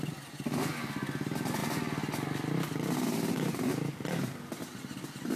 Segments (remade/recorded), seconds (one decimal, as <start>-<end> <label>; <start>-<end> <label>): 0.0-5.4 recorded